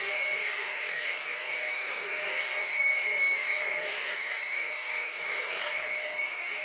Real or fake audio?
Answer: fake